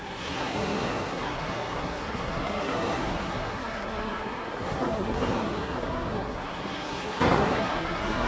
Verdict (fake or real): fake